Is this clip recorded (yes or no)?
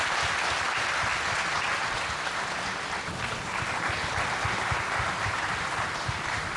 yes